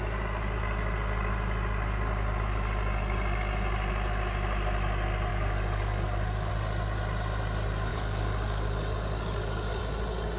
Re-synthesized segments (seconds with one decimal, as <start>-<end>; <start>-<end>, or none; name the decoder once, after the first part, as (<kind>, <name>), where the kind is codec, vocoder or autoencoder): 5.3-6.5 (codec, DAC); 7.9-9.8